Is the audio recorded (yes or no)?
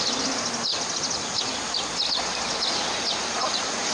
yes